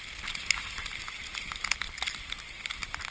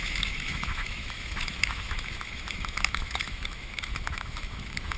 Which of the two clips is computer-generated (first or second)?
second